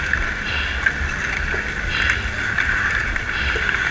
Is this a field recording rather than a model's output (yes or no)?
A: yes